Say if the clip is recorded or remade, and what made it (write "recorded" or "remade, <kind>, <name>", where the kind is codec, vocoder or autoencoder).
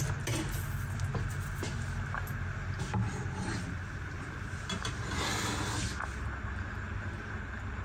recorded